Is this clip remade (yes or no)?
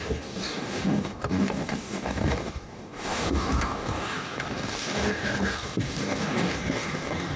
yes